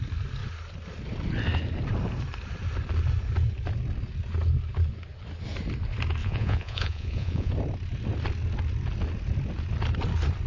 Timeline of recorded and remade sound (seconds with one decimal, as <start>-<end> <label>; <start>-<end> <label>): 0.0-6.2 recorded; 6.2-7.5 remade; 7.5-10.5 recorded